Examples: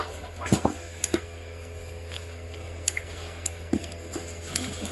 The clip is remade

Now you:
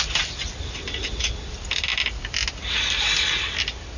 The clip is recorded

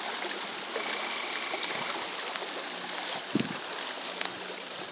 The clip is recorded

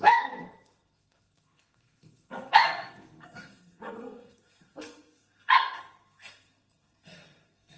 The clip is remade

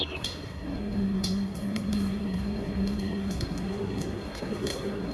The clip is remade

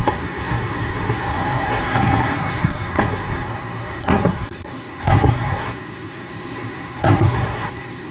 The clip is remade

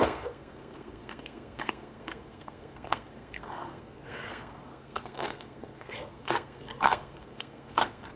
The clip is remade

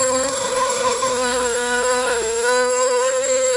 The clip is remade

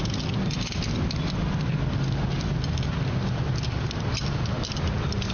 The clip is recorded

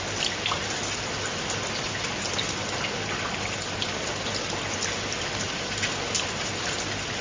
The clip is recorded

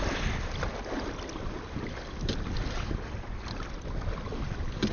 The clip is recorded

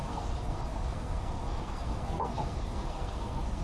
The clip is remade